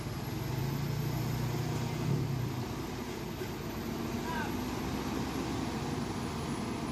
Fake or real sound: real